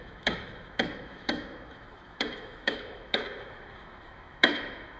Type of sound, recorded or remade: remade